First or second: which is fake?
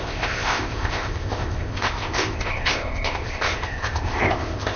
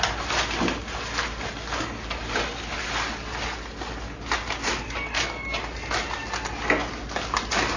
first